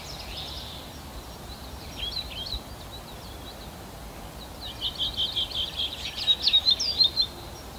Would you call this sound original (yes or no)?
yes